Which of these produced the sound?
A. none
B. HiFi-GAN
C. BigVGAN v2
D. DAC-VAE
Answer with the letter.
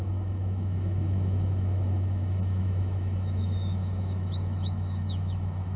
D